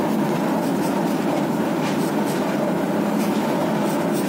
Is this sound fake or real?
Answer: real